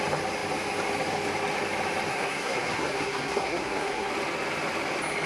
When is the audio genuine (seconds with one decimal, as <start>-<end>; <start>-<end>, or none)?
0.0-2.1; 4.1-5.3